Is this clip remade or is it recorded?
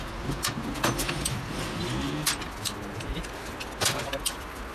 recorded